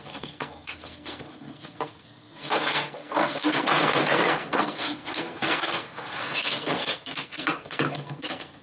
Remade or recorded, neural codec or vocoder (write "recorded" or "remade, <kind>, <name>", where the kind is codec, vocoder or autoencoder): remade, codec, SNAC